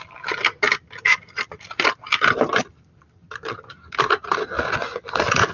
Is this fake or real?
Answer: real